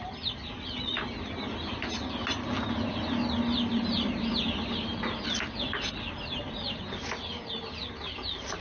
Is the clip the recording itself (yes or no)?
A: yes